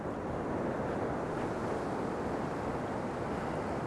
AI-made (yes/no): no